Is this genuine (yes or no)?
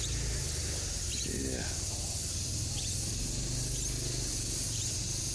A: yes